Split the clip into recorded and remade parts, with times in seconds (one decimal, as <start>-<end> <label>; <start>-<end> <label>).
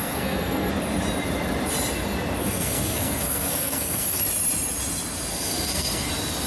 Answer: 0.0-0.7 remade; 0.7-2.4 recorded; 2.4-4.2 remade; 4.2-5.3 recorded; 5.3-6.1 remade; 6.1-6.5 recorded